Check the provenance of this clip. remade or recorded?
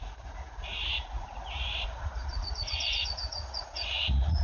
remade